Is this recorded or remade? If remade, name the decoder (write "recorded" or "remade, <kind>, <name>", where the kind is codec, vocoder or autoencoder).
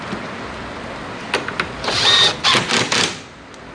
recorded